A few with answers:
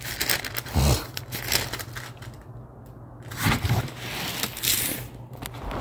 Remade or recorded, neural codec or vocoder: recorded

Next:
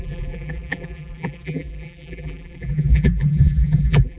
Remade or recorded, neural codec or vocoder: remade, vocoder, BigVGAN v2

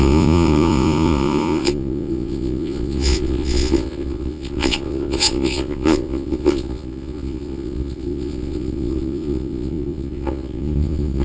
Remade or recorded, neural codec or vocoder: remade, vocoder, Vocos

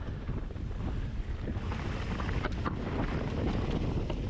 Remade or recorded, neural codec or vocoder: recorded